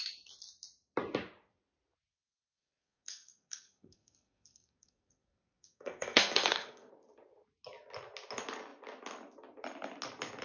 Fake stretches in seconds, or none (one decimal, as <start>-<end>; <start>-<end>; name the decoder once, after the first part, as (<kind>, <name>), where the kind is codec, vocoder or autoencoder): 2.1-6.9 (codec, SNAC)